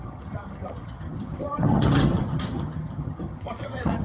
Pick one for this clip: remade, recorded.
remade